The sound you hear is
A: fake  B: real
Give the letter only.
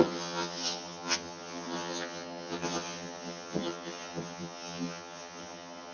A